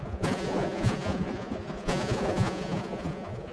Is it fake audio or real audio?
fake